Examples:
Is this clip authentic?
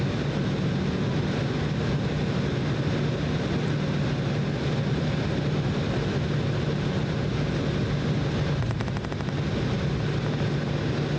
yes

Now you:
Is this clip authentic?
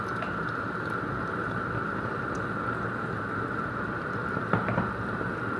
yes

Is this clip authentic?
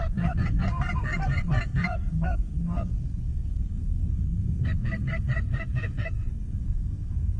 no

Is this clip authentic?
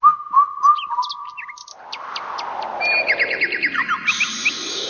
yes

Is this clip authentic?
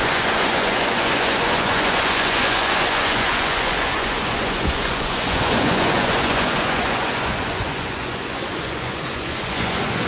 no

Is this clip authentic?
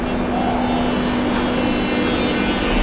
yes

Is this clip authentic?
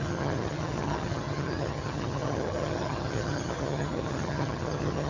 no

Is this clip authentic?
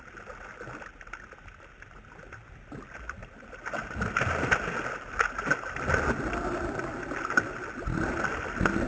yes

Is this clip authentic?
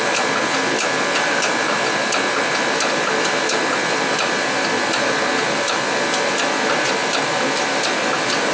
yes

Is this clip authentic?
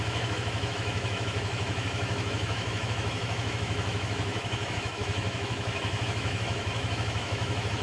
no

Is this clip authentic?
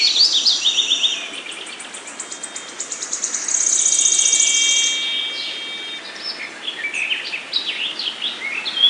yes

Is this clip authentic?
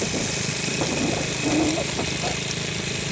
yes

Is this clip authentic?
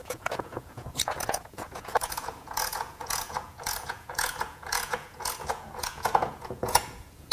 no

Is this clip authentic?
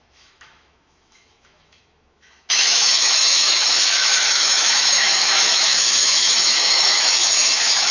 no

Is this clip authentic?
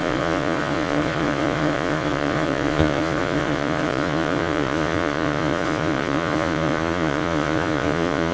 no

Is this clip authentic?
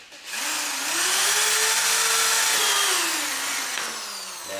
yes